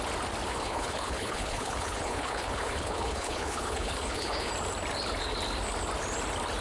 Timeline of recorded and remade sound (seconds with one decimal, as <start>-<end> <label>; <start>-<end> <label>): 0.0-0.5 recorded; 0.5-4.5 remade; 4.5-6.6 recorded